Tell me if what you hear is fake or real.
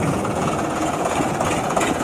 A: fake